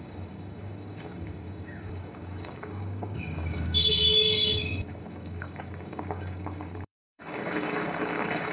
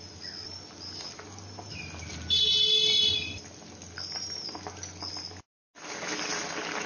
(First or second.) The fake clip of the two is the first